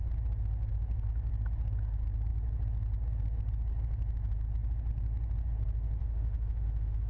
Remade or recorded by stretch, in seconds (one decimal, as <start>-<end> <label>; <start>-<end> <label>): 0.0-6.0 recorded; 6.0-7.1 remade